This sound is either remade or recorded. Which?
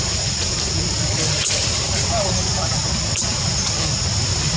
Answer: recorded